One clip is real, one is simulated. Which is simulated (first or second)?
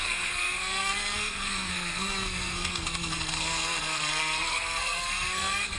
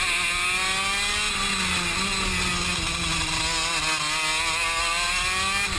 first